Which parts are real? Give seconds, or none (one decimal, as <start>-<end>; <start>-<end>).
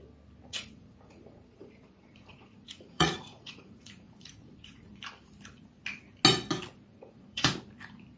0.0-0.5; 5.0-6.9; 7.5-8.2